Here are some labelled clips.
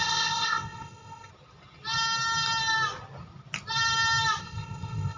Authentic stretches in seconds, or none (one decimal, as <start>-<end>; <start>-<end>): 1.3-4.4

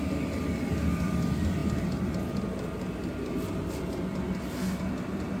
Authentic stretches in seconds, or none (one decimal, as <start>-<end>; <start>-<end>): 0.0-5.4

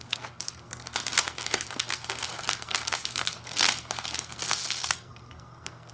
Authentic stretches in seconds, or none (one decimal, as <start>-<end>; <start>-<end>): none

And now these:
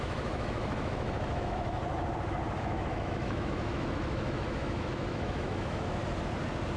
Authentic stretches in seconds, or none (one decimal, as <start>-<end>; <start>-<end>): 1.8-2.6; 6.0-6.8

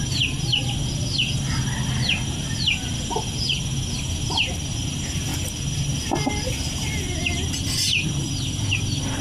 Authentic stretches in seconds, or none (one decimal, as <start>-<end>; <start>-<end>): 0.0-9.2